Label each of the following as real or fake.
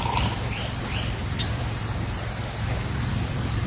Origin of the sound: fake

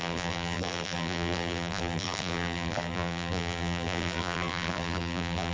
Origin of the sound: fake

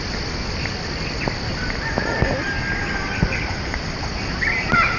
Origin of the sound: real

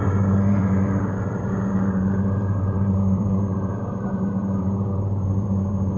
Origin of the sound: fake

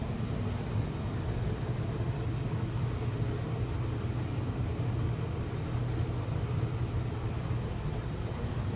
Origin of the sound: real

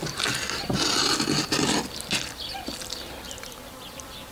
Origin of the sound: real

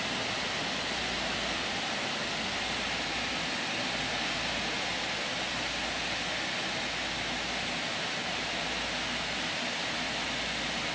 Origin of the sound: real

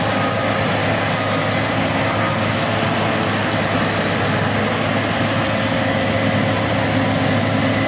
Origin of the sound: real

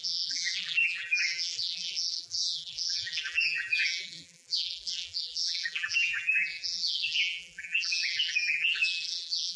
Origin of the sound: fake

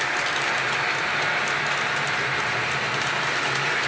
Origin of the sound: real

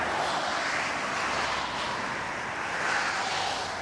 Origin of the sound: real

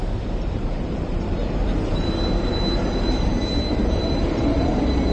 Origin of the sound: fake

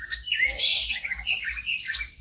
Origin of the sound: fake